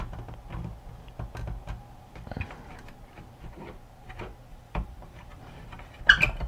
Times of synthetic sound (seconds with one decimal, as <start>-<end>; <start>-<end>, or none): 4.5-6.0